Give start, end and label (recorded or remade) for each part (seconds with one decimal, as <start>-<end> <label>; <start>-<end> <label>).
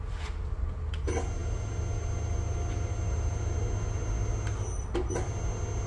0.0-5.9 recorded